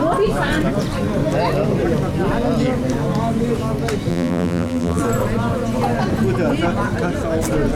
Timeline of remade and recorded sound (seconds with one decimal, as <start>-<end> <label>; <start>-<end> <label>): 0.0-4.1 recorded; 4.1-5.0 remade; 5.0-7.8 recorded